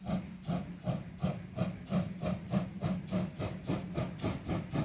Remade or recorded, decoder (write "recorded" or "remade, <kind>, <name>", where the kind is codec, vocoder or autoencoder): recorded